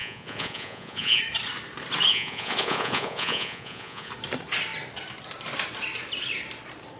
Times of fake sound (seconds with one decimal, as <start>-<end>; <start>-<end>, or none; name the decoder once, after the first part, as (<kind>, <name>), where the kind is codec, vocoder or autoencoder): 0.0-1.2 (vocoder, Vocos); 2.1-4.1